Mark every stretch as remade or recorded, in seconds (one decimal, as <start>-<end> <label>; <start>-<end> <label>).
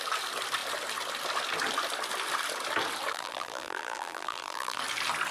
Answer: 0.0-3.1 recorded; 3.1-4.8 remade; 4.8-5.3 recorded